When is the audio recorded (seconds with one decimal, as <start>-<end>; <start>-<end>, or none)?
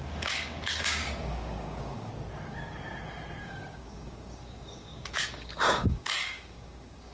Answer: 2.1-3.4